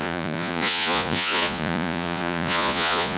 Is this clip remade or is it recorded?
remade